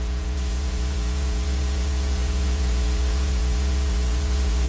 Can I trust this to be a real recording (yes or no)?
no